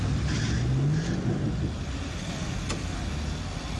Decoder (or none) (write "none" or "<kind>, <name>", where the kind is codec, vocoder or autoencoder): none